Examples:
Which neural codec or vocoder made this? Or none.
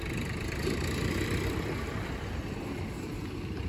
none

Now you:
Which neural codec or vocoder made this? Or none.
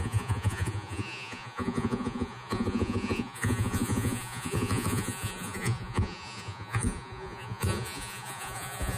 vocoder, Vocos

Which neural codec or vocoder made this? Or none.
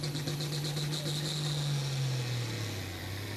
none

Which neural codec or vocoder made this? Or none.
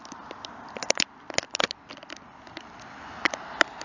none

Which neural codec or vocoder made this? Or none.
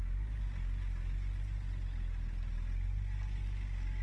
none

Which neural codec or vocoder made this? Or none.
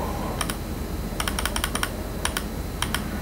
none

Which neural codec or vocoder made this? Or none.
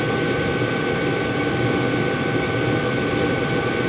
none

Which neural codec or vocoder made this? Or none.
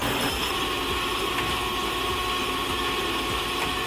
none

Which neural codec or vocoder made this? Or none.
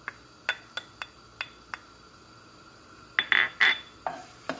none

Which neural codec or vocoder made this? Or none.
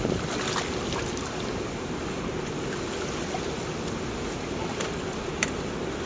none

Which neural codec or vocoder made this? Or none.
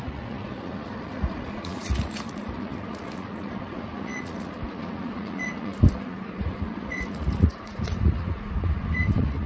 vocoder, Vocos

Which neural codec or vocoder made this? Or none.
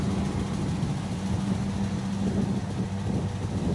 none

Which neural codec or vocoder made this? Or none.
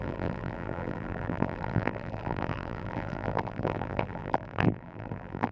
vocoder, BigVGAN v2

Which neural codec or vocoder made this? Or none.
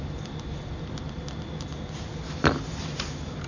none